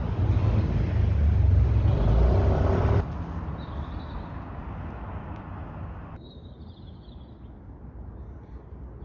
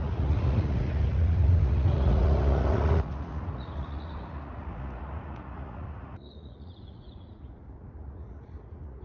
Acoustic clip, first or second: first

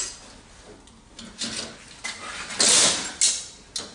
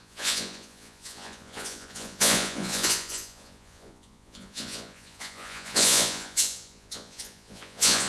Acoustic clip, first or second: first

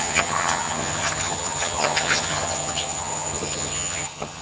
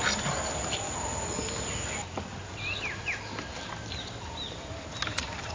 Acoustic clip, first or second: second